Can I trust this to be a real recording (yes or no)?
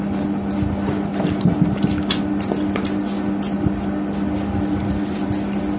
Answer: yes